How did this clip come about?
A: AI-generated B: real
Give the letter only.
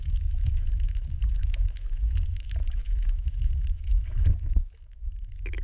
A